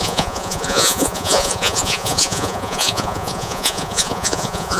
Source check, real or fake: fake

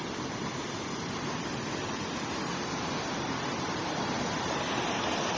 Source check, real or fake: real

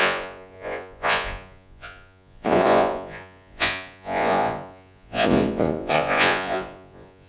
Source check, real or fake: fake